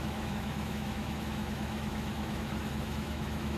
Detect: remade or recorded remade